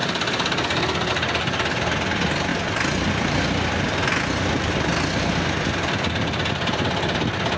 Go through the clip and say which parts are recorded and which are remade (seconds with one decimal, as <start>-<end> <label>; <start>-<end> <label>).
0.0-7.6 recorded